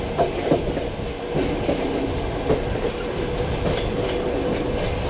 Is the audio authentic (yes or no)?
yes